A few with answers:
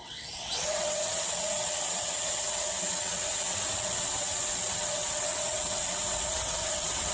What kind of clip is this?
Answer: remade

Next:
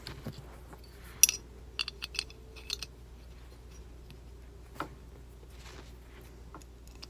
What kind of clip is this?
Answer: recorded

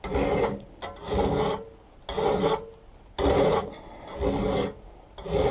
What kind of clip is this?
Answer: recorded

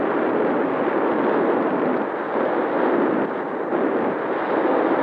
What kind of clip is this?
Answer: recorded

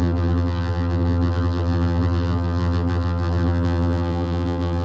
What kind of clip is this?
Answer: remade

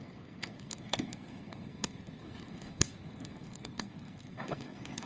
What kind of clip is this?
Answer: remade